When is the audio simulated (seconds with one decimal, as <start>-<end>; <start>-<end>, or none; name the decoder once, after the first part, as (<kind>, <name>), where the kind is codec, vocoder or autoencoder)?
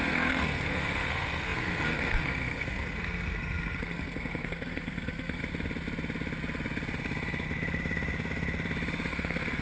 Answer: 0.0-5.4 (codec, SNAC); 9.1-9.6